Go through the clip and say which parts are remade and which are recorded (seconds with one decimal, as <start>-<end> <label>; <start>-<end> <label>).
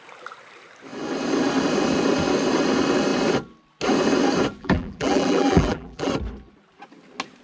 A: 0.0-4.6 recorded; 4.6-6.1 remade; 6.1-7.4 recorded